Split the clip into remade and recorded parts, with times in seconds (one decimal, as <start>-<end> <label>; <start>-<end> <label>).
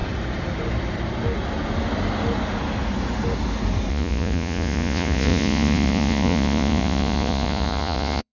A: 0.0-3.9 recorded; 3.9-8.3 remade